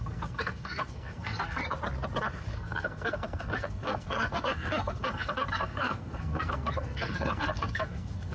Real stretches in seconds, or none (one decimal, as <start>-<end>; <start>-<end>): 1.6-2.2